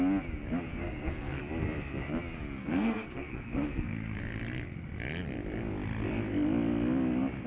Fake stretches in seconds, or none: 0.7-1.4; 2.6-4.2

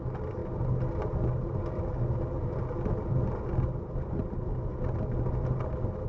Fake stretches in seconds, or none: none

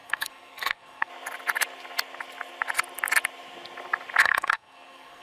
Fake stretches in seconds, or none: 0.0-1.1; 4.2-5.2

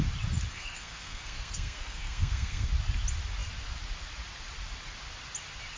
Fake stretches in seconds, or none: 0.5-2.7

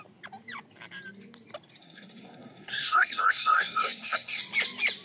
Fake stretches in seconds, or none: 1.8-4.4

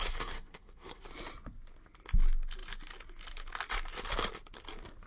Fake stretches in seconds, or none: 0.0-1.0

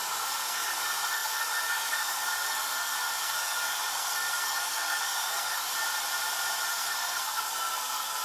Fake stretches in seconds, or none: 0.0-5.7; 6.7-8.2

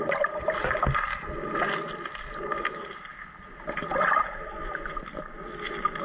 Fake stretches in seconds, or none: none